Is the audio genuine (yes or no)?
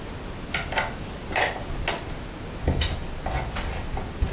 yes